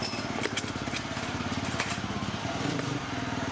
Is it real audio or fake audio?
fake